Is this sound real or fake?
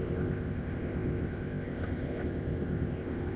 fake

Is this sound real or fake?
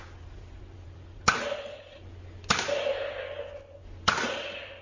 real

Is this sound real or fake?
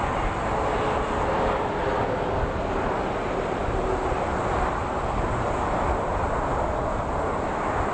real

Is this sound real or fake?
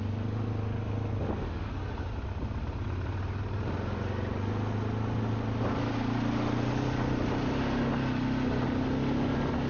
real